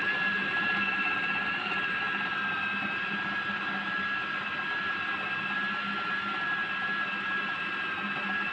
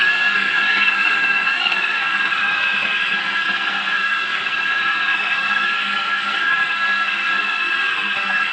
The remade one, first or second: second